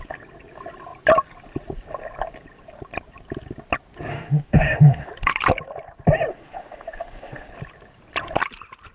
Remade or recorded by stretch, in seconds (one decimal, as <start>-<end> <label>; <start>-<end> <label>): 0.0-4.1 recorded; 4.1-5.1 remade; 5.1-6.3 recorded; 6.3-7.5 remade; 7.5-8.9 recorded